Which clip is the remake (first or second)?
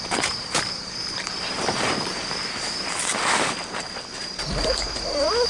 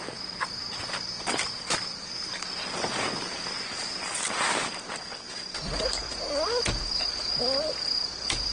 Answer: first